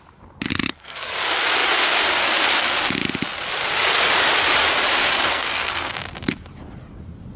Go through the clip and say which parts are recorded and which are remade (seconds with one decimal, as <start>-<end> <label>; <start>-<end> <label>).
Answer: 0.0-0.5 recorded; 0.5-1.1 remade; 1.1-5.3 recorded; 5.3-5.9 remade; 5.9-7.4 recorded